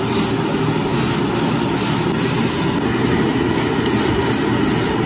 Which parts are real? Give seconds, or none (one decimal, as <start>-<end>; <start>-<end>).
0.0-5.1